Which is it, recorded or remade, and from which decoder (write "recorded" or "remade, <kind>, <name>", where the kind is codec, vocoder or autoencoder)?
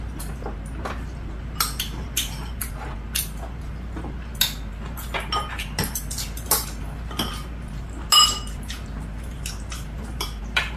recorded